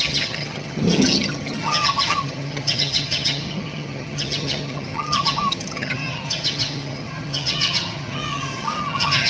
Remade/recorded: remade